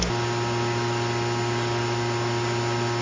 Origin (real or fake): real